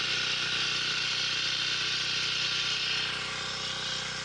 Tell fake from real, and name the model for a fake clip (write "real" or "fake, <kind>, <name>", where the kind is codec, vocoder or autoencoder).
real